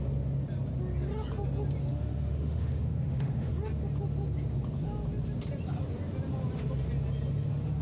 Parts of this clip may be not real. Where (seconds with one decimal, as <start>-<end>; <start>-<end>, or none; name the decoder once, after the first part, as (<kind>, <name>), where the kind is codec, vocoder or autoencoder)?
1.9-3.5 (autoencoder, DAC-VAE)